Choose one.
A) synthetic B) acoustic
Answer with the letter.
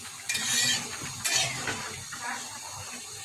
B